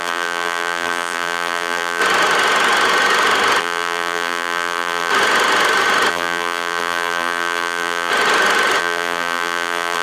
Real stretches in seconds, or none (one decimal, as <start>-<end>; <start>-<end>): 2.0-3.6; 5.1-6.1; 8.1-8.8